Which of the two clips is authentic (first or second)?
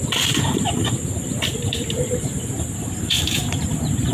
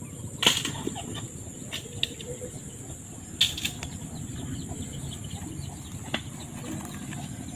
second